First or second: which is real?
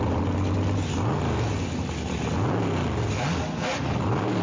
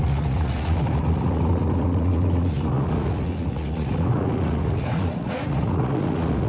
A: first